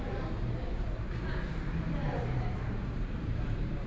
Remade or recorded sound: remade